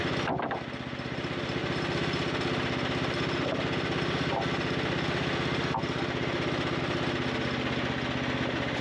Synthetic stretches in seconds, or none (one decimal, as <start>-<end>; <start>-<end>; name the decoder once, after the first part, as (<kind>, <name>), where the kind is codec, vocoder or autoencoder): none